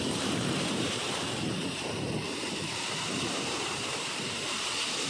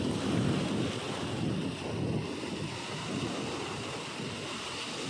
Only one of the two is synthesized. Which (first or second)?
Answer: first